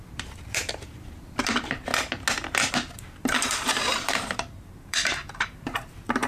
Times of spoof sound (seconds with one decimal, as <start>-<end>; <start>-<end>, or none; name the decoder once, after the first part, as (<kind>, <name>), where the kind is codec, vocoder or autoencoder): 0.0-1.9 (vocoder, BigVGAN v2); 2.7-6.3